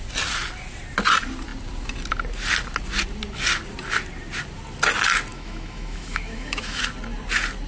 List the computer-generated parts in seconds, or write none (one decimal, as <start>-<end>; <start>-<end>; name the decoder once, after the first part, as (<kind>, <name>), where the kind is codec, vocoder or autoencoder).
5.3-6.8 (autoencoder, DAC-VAE)